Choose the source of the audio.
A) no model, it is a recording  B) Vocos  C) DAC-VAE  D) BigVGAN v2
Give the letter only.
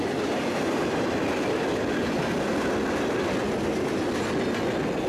A